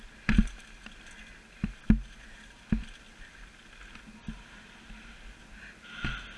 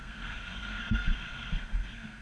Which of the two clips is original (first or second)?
first